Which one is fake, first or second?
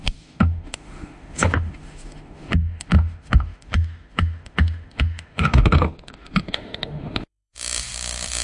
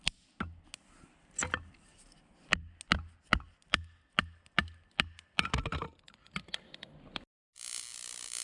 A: first